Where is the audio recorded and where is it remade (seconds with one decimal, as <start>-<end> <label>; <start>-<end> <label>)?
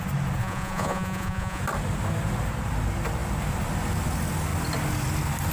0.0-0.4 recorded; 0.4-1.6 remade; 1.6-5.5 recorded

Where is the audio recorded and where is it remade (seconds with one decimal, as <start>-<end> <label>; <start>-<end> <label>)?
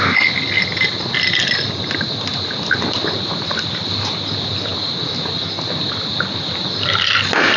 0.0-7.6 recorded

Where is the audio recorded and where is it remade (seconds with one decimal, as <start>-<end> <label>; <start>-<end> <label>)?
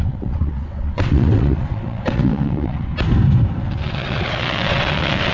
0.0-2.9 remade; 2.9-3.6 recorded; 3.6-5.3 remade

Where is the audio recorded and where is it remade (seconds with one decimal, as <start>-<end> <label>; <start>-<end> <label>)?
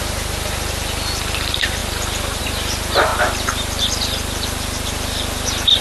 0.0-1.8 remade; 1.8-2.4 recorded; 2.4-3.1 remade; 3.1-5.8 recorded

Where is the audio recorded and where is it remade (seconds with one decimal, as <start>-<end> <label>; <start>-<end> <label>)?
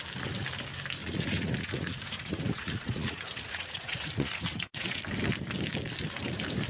0.0-1.0 recorded; 1.0-5.0 remade; 5.0-6.7 recorded